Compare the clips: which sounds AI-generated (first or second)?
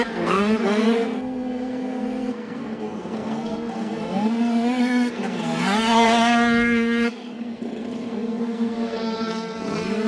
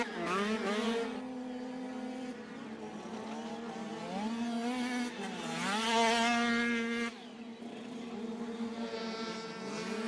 first